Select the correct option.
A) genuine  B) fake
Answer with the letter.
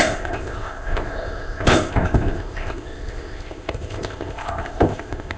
B